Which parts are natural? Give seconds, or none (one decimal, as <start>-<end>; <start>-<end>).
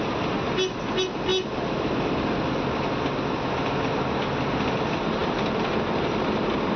0.0-6.8